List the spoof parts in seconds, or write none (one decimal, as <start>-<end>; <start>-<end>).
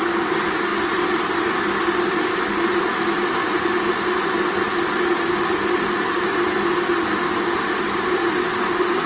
none